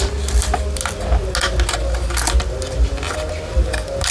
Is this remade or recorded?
recorded